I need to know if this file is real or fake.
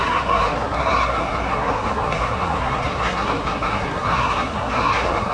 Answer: fake